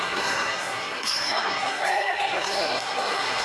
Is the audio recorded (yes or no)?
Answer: no